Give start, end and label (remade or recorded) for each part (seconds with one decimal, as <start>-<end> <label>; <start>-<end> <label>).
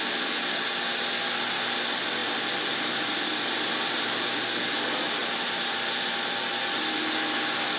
0.0-2.2 recorded; 2.2-3.1 remade; 3.1-5.2 recorded; 5.2-6.5 remade; 6.5-7.8 recorded